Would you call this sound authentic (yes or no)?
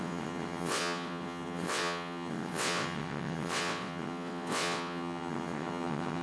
no